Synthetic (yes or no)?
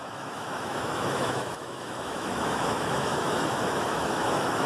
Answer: yes